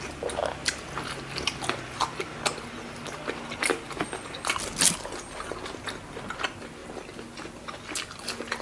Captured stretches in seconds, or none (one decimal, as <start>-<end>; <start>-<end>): 0.0-8.6